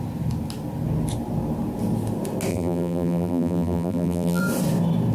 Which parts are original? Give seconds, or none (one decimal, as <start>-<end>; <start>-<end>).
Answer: 0.0-2.5; 4.4-5.1